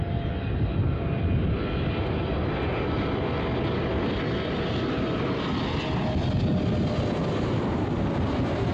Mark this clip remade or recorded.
recorded